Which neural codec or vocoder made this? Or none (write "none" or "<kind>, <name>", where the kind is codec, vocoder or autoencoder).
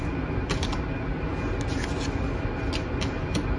none